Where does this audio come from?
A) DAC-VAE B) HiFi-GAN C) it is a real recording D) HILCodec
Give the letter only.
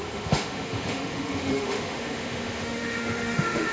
A